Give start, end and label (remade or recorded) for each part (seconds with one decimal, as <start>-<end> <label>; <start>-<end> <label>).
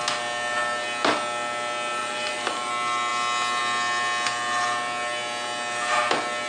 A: 0.0-2.0 recorded; 2.0-2.7 remade; 2.7-6.5 recorded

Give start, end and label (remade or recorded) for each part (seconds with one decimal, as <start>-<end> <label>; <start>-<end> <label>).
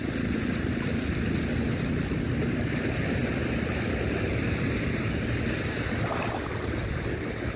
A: 0.0-7.6 recorded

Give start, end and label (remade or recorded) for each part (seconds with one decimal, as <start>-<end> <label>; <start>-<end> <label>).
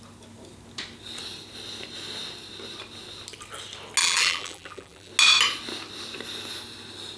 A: 0.0-4.0 recorded; 4.0-5.1 remade; 5.1-7.2 recorded